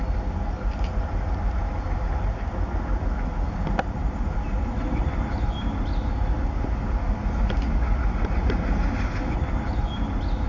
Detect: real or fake real